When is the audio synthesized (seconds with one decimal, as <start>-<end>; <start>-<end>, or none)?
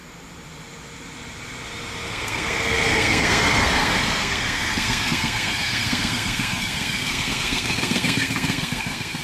2.1-9.2